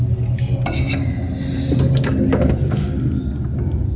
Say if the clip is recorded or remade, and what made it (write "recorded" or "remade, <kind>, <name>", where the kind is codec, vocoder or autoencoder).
recorded